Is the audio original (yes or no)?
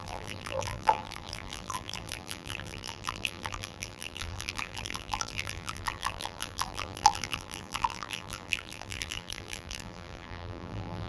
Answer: no